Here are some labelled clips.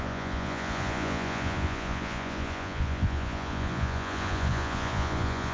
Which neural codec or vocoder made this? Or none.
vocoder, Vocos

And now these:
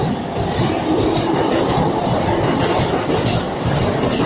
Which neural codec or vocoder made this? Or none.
vocoder, BigVGAN v2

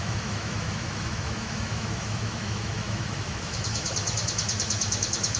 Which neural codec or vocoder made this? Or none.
autoencoder, DAC-VAE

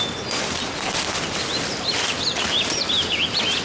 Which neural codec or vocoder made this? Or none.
none